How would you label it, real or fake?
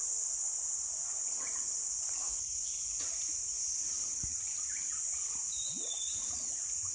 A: fake